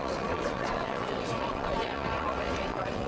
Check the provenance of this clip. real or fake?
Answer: fake